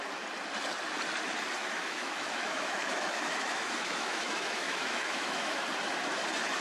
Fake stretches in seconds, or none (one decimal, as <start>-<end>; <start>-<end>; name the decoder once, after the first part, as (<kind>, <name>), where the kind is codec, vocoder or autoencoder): 1.6-5.6 (autoencoder, DAC-VAE)